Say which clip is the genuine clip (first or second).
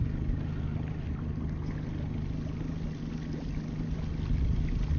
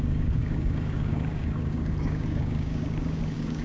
first